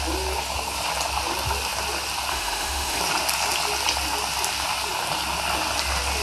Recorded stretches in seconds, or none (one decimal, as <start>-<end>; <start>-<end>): 0.0-2.3; 3.0-6.2